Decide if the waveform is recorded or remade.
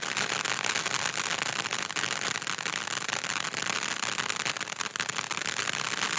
recorded